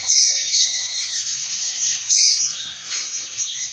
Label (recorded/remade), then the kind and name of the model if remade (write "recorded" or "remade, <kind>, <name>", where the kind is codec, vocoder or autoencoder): remade, codec, SNAC